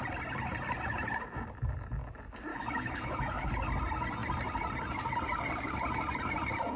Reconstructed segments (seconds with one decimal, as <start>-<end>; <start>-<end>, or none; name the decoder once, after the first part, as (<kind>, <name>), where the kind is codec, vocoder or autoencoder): 2.5-3.5 (autoencoder, DAC-VAE)